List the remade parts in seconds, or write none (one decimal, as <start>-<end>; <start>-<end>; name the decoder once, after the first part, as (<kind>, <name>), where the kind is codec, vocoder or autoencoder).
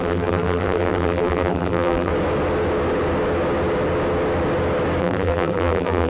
0.0-2.1 (vocoder, BigVGAN v2); 5.0-6.1